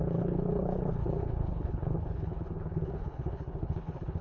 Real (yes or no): no